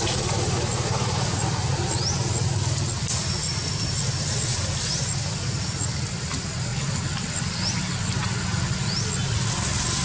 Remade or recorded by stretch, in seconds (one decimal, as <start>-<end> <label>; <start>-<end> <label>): 0.0-10.0 recorded